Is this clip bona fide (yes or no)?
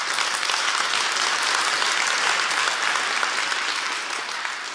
yes